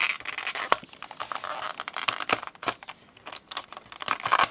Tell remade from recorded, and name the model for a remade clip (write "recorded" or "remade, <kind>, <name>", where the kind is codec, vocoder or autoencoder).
recorded